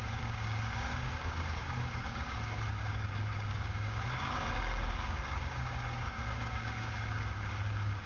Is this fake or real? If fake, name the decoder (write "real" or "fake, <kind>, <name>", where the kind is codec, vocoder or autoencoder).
fake, codec, DAC